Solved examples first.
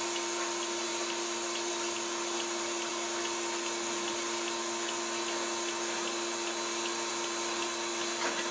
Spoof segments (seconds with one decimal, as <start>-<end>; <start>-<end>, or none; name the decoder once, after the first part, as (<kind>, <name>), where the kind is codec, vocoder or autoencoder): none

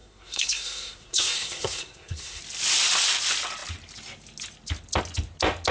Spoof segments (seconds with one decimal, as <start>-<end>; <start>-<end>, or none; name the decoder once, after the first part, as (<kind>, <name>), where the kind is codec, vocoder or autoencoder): 0.0-2.4 (codec, SNAC)

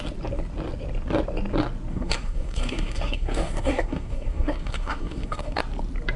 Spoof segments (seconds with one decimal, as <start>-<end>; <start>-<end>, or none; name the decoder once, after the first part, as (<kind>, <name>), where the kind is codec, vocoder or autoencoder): 1.9-5.6 (codec, SNAC)